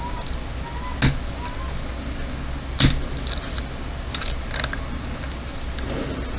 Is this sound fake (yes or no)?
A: no